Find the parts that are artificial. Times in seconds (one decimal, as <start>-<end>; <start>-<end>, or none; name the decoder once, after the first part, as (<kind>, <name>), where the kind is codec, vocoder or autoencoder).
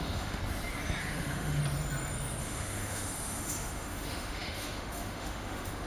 0.0-0.4 (autoencoder, DAC-VAE); 1.0-1.6; 2.4-5.9